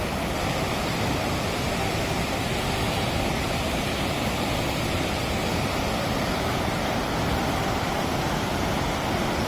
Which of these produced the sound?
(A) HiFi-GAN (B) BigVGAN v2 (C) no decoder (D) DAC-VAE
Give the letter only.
B